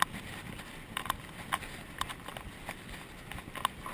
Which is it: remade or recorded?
recorded